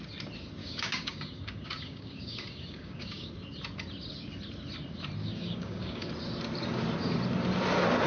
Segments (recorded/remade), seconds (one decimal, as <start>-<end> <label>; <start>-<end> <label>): 0.0-0.6 recorded; 0.6-3.3 remade; 3.3-5.2 recorded; 5.2-6.1 remade; 6.1-8.1 recorded